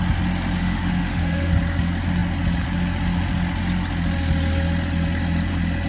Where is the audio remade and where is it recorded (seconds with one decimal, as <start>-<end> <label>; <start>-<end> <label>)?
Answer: 0.0-0.6 recorded; 0.6-1.5 remade; 1.5-5.9 recorded